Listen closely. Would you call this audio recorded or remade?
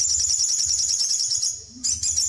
remade